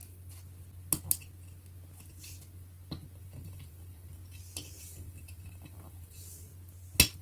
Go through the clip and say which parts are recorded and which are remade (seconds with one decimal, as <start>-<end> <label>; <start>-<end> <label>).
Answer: 0.0-3.2 recorded; 3.2-4.2 remade; 4.2-4.8 recorded; 4.8-6.5 remade; 6.5-7.2 recorded